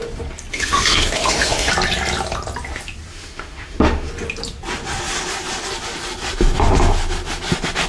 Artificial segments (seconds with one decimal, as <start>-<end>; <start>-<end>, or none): 0.5-1.7; 3.1-4.1